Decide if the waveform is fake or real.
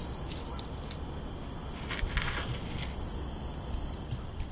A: real